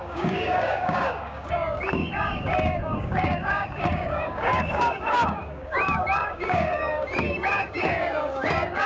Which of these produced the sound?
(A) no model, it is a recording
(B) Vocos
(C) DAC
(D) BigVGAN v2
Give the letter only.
C